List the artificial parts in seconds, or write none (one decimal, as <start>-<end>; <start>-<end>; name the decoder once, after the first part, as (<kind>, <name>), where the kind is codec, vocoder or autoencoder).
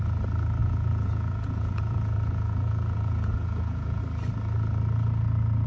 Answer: 0.6-4.0 (vocoder, Vocos)